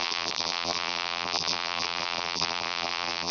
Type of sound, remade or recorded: remade